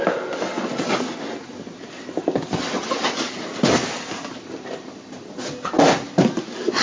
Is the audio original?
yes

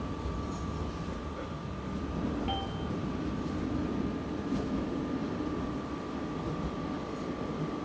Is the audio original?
yes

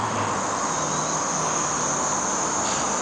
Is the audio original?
yes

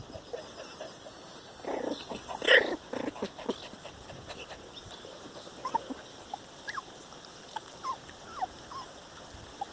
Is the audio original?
yes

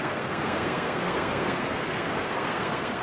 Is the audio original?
no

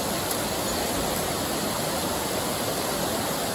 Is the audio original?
yes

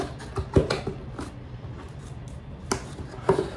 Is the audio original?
yes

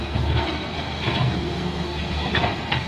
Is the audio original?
no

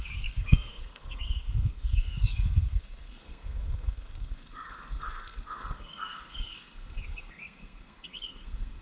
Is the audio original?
no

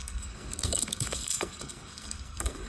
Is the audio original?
no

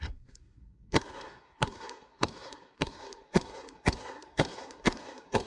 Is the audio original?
no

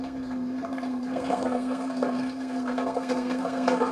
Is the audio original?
no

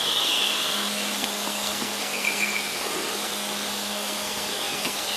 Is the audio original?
no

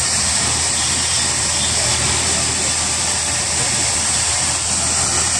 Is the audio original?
yes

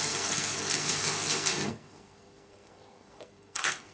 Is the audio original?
no